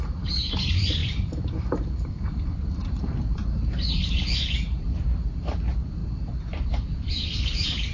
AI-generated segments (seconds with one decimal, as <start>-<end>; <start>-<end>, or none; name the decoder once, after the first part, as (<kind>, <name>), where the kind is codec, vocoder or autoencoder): 0.0-3.4 (vocoder, BigVGAN v2); 5.3-6.0; 6.7-7.9